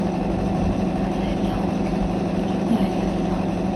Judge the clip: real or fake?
fake